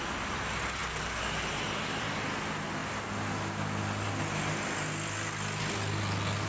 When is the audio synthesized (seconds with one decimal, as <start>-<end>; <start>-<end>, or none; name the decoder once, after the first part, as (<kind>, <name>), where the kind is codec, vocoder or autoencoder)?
none